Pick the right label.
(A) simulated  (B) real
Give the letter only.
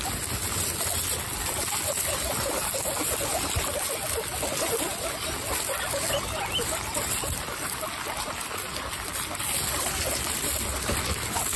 B